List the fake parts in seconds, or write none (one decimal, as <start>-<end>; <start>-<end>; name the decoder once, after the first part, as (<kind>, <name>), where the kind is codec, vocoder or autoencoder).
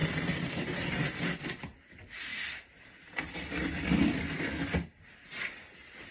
2.3-4.2 (vocoder, BigVGAN v2)